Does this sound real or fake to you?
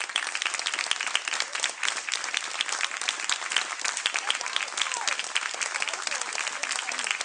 real